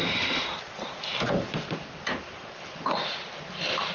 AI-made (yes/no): no